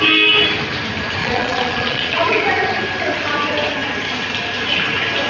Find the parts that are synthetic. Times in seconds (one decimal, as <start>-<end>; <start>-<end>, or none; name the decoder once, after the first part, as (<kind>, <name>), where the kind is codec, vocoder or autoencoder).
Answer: 1.2-2.5 (vocoder, Vocos)